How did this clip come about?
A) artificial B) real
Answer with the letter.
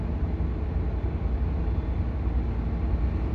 B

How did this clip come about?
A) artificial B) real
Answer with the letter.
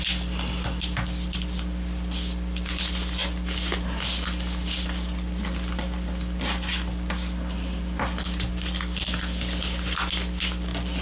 B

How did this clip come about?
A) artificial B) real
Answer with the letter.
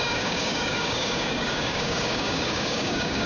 A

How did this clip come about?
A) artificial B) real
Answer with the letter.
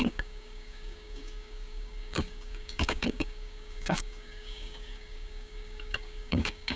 A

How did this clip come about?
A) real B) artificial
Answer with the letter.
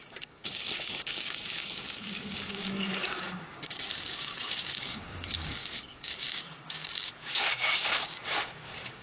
B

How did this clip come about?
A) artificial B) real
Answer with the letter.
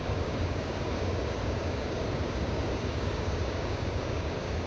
A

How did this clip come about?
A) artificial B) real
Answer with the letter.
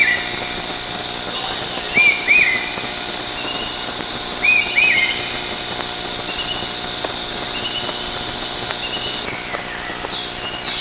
B